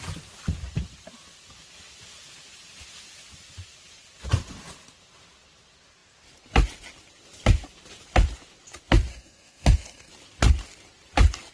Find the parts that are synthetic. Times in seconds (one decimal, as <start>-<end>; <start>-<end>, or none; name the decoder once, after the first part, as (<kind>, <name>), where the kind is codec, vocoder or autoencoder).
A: 9.1-10.1 (codec, SNAC)